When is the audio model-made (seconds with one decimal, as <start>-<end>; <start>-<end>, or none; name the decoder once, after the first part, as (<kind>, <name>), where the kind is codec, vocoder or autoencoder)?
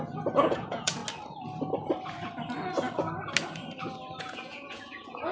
0.0-1.0 (vocoder, Vocos); 4.2-5.3